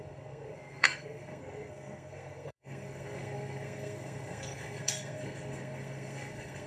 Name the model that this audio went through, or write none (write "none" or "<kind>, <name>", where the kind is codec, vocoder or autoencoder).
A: codec, SNAC